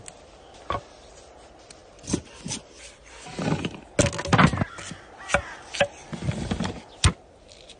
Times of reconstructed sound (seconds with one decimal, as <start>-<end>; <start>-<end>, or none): 1.8-2.3